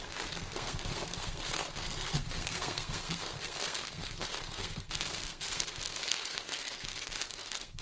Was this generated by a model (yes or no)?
yes